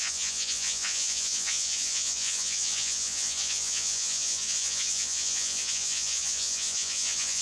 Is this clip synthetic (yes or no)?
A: yes